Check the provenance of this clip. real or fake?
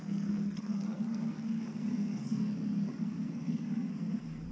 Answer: fake